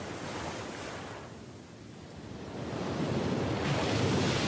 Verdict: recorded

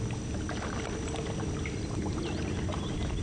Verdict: recorded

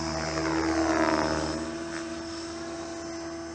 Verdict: recorded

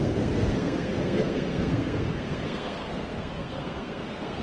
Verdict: remade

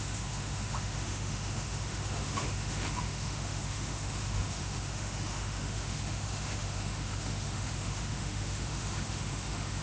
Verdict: remade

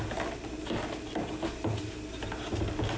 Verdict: recorded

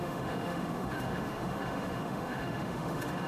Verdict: remade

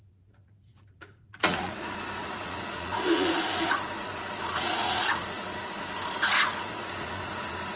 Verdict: remade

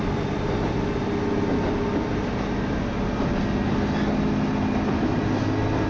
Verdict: recorded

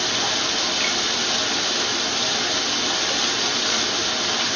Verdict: recorded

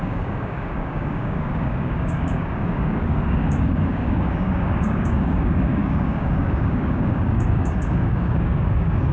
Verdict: remade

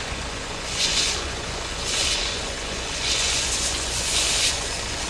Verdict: remade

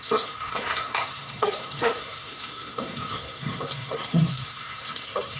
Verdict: remade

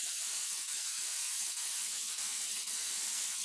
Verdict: remade